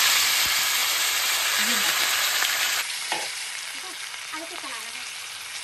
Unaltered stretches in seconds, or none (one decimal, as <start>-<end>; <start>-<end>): 0.0-0.8; 3.5-5.6